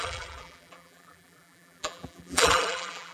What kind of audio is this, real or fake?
fake